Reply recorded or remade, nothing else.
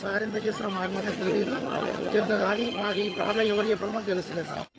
remade